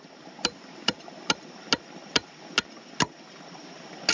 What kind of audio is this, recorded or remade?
recorded